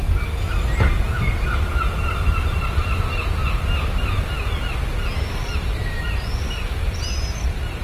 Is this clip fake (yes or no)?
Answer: no